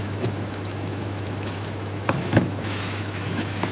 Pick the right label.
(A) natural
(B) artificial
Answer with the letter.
B